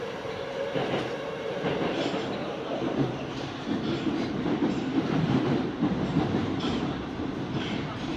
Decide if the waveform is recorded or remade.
remade